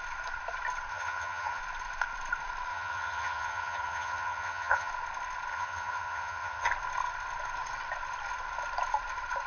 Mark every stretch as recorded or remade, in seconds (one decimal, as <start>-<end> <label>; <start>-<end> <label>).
0.0-0.9 recorded; 0.9-1.6 remade; 1.6-2.7 recorded; 2.7-4.9 remade; 4.9-5.5 recorded; 5.5-6.7 remade; 6.7-9.5 recorded